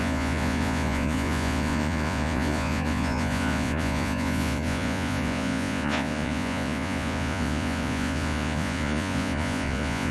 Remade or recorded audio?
remade